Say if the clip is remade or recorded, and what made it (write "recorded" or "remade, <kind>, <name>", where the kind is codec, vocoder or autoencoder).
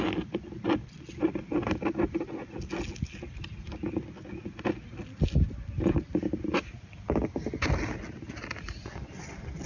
recorded